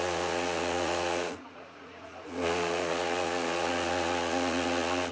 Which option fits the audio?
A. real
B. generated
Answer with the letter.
B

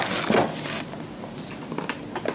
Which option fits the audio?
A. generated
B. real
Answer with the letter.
B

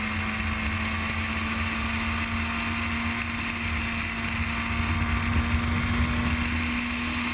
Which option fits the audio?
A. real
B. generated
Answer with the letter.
A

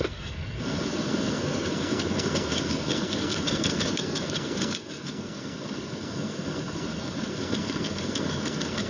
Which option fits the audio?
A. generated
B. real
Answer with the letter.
A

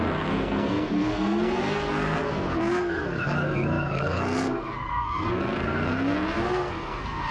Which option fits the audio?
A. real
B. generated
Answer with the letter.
B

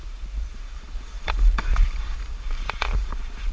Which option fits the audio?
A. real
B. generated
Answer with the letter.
B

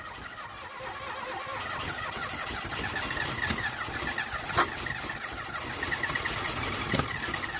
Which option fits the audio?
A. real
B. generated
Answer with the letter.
A